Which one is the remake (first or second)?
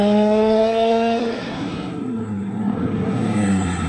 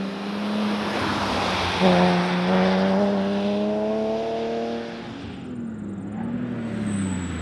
first